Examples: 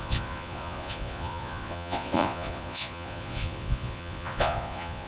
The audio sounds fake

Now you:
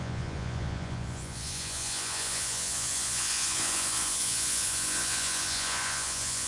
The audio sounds fake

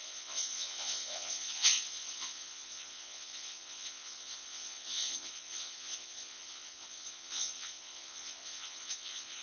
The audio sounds fake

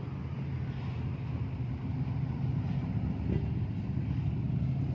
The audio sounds real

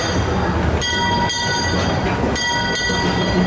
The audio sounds real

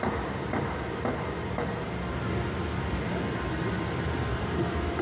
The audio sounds real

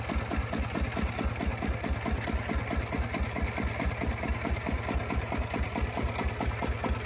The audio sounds real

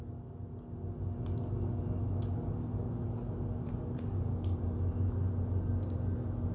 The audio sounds real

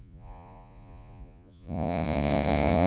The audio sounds fake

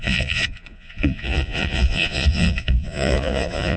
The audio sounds fake